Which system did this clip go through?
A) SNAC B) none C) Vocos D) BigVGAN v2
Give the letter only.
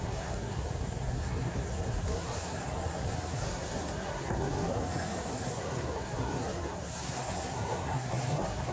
A